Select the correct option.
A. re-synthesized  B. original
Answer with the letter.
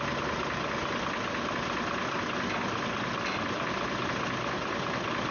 B